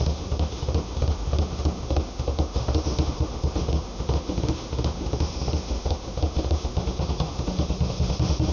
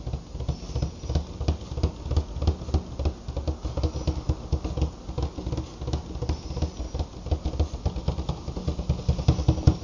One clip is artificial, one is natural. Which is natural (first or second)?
second